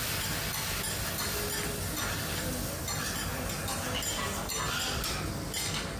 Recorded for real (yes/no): yes